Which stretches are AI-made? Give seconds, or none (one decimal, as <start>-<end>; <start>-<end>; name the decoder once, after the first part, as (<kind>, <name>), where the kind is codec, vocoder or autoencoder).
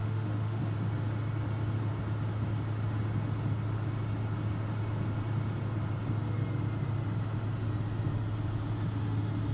0.0-0.6 (autoencoder, DAC-VAE)